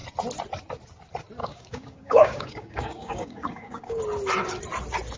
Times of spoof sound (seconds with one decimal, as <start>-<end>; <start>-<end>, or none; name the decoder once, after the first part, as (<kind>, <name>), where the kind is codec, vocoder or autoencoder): 1.4-4.0 (codec, DAC)